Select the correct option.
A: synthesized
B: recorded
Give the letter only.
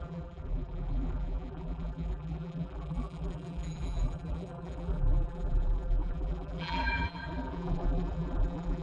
A